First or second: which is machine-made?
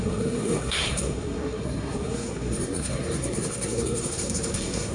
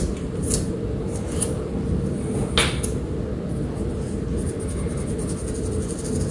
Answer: first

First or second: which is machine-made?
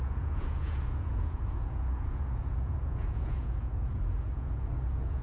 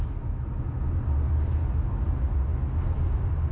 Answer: first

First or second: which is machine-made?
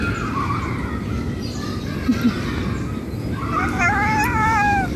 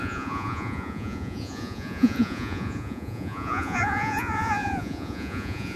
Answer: second